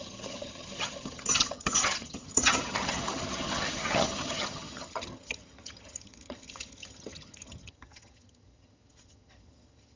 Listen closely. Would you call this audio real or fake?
fake